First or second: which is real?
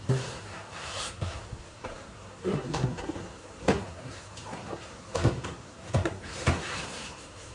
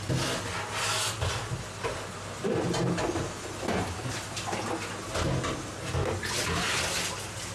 second